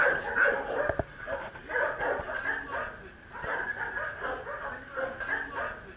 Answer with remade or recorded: recorded